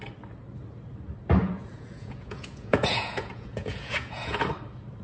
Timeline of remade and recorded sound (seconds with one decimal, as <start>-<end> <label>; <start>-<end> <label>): 0.0-1.4 recorded; 1.4-4.4 remade; 4.4-5.0 recorded

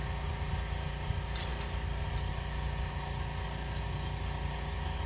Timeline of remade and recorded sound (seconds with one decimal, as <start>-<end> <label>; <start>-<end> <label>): 0.0-5.1 recorded